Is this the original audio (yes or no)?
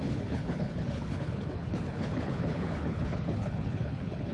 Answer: no